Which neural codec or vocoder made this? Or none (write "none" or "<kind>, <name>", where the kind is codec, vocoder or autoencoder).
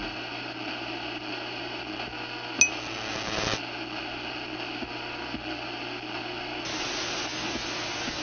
none